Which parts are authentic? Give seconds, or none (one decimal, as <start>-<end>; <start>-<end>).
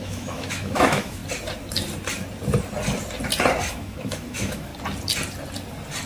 1.2-3.7; 4.7-6.1